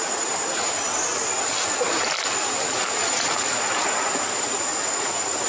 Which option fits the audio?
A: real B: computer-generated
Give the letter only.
A